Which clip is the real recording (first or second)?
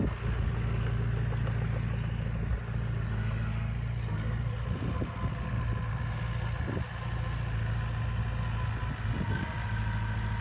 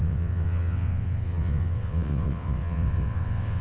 first